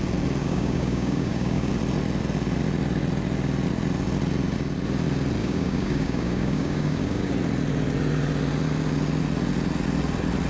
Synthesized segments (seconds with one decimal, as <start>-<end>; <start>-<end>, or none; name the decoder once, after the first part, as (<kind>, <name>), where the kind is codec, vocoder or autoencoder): 0.4-1.7 (codec, DAC); 5.4-7.3

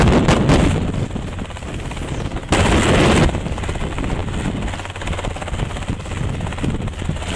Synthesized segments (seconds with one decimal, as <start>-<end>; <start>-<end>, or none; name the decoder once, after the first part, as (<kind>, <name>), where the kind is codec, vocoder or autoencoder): none

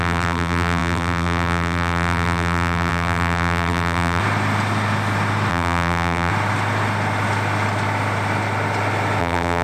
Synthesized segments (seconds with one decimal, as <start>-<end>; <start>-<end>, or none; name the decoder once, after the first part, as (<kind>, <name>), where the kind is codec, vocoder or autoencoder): 0.0-4.2 (vocoder, BigVGAN v2); 5.5-6.3; 9.2-9.6

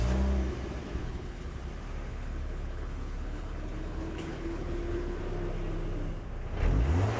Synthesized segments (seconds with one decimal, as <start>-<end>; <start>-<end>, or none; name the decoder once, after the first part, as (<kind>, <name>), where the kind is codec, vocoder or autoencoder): 1.0-1.6 (codec, HILCodec); 2.1-5.2

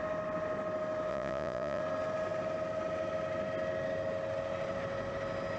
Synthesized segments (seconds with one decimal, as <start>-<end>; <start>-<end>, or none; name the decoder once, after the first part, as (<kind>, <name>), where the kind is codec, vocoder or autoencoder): 1.1-1.8 (vocoder, Vocos)

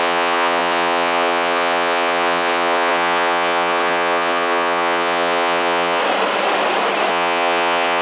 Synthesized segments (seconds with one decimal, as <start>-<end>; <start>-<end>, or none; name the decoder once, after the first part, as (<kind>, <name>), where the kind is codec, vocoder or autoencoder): 0.0-6.0 (vocoder, WaveNeXt); 7.1-8.0

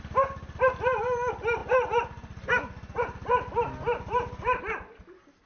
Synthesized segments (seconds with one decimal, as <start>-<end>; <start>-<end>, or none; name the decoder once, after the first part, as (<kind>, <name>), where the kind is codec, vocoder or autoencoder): none